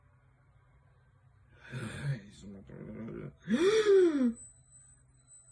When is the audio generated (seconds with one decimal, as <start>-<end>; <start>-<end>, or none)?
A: none